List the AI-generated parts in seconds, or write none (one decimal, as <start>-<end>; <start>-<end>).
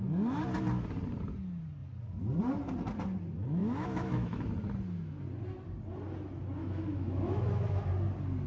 3.6-4.5; 6.6-7.8